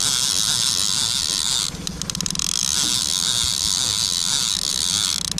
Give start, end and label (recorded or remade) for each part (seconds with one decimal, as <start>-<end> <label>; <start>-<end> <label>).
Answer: 0.0-5.4 recorded